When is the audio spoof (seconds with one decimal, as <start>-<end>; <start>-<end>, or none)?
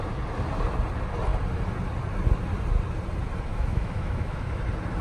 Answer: 3.5-4.6